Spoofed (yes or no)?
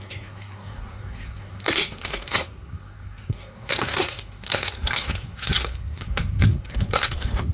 yes